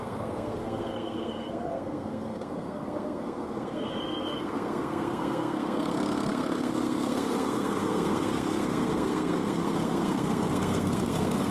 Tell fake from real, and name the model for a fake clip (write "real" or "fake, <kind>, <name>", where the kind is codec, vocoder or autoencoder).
fake, codec, SNAC